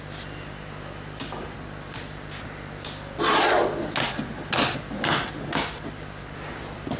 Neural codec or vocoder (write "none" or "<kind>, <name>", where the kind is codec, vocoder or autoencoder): none